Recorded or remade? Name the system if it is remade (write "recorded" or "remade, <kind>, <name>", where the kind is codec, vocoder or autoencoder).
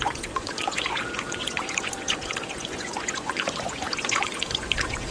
remade, vocoder, Vocos